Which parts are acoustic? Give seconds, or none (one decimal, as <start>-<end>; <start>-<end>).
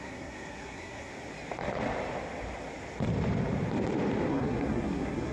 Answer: 1.1-4.3